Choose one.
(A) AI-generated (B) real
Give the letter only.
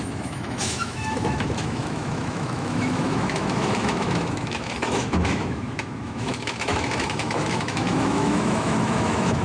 A